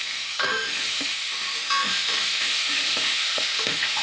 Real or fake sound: fake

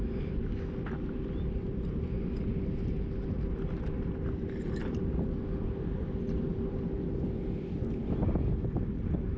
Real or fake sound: real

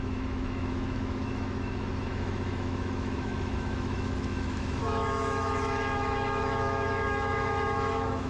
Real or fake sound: fake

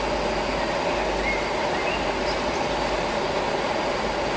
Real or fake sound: real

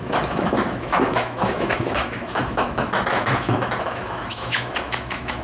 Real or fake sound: fake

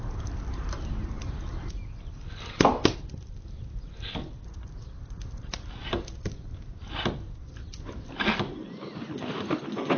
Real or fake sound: real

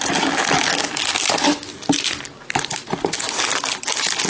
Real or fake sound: real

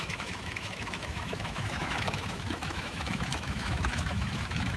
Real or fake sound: fake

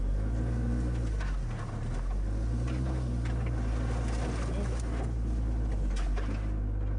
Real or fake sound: real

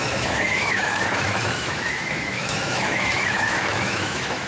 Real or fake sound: fake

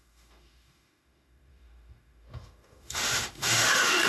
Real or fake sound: fake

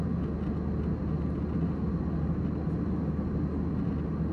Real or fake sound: real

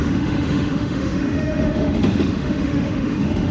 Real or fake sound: fake